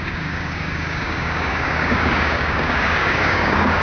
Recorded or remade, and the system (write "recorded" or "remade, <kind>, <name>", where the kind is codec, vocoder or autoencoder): remade, codec, DAC